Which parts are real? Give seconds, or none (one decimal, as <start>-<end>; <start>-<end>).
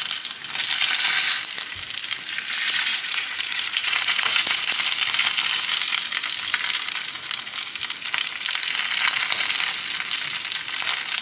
0.0-2.9; 4.7-11.2